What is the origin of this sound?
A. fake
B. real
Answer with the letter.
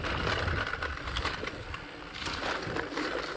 B